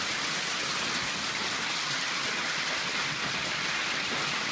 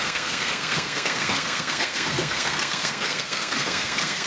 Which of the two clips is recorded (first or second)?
first